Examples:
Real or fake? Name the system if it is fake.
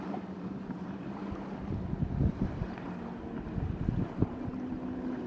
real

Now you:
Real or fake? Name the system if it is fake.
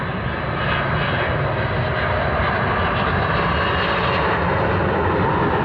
real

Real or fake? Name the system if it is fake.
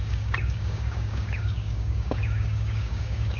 fake, codec, DAC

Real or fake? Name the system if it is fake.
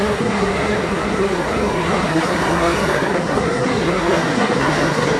fake, codec, SNAC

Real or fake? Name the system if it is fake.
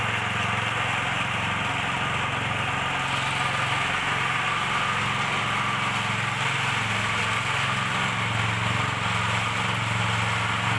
real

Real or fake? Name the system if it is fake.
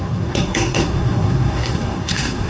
fake, codec, SNAC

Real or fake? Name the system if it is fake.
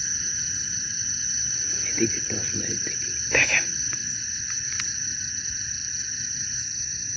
real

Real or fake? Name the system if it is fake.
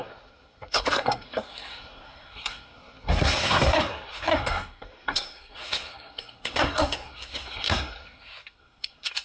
fake, codec, SNAC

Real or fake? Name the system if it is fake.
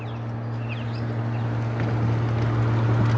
real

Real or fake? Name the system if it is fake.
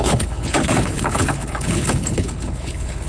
fake, codec, HILCodec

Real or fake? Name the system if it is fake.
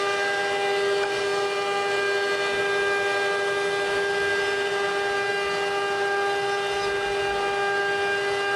real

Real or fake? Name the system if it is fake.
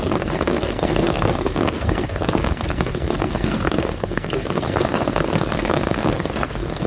fake, codec, SNAC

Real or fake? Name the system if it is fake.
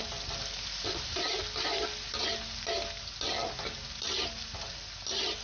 real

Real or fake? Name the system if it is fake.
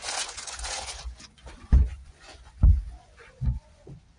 fake, vocoder, Vocos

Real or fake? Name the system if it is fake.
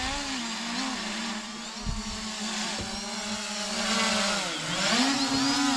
real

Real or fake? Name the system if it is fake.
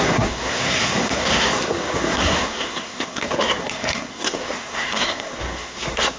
fake, codec, SNAC